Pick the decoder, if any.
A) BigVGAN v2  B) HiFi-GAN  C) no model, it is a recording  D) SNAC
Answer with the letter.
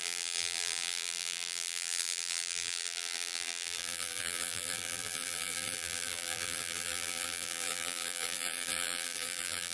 A